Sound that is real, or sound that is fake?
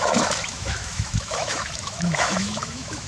fake